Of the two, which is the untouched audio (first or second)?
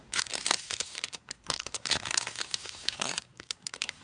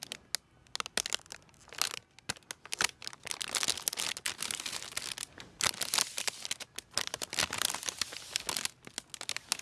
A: second